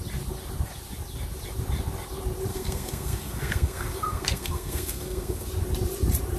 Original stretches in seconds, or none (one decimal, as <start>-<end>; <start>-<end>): 0.0-2.5; 5.5-6.4